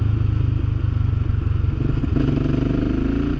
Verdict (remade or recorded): recorded